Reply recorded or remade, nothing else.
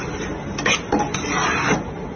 recorded